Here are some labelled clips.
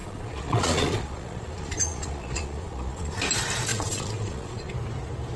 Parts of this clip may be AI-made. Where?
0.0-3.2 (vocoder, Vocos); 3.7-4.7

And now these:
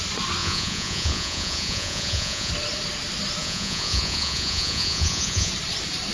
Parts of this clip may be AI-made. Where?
0.4-2.5 (vocoder, Vocos); 3.4-5.5

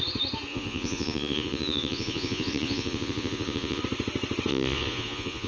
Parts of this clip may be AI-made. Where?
0.5-3.8 (vocoder, Vocos); 4.5-5.5

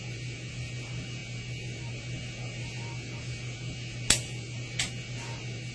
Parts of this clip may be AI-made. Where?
none

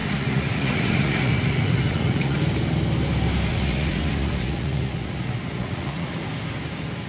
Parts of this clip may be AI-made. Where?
0.0-2.4 (vocoder, Vocos); 3.5-6.2

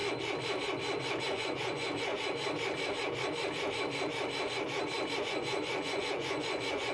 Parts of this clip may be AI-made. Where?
1.2-2.1 (vocoder, Vocos); 5.2-6.9

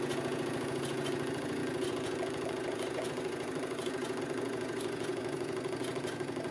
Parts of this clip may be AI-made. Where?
0.0-6.5 (vocoder, Vocos)